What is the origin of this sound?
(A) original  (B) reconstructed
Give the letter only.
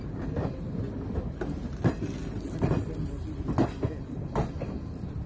A